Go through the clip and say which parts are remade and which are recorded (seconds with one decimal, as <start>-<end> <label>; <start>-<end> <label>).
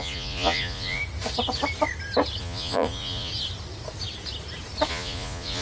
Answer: 0.0-1.0 remade; 1.0-2.4 recorded; 2.4-3.3 remade; 3.3-4.9 recorded; 4.9-5.6 remade